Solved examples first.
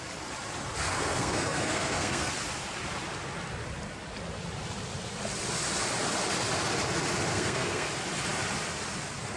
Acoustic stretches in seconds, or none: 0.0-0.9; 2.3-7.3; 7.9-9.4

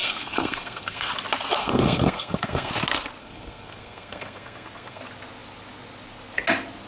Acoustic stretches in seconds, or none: 1.1-1.6; 2.7-3.2; 5.0-6.9

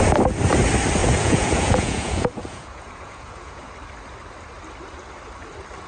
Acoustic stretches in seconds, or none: 0.0-1.0; 3.7-5.9

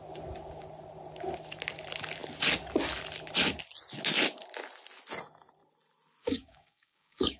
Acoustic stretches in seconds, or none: 0.0-6.2

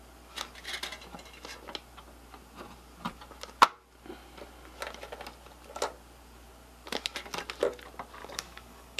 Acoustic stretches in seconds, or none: 0.0-8.2

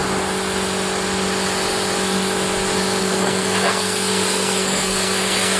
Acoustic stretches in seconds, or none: 0.0-3.0

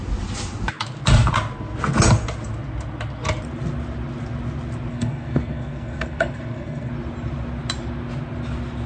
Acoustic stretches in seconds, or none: 0.0-4.9; 6.9-8.9